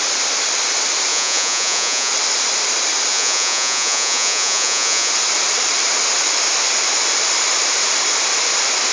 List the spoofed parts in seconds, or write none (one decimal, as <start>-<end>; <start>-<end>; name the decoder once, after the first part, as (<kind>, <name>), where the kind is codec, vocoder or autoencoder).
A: 1.1-2.1 (vocoder, Vocos); 3.1-5.1